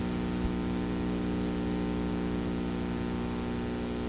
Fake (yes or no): no